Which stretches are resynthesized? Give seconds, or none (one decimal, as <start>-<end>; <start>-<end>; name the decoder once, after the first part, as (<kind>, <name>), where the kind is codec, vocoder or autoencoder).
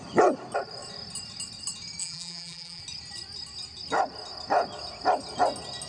2.0-2.8 (vocoder, BigVGAN v2)